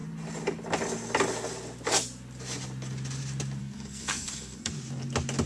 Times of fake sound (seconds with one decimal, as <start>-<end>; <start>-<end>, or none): 3.6-4.7